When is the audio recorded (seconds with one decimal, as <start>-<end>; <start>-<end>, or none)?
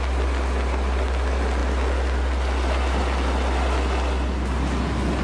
0.0-5.2